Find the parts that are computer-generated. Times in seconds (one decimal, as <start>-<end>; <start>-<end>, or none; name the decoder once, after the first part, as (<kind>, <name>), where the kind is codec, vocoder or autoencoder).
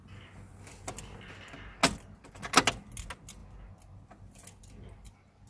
none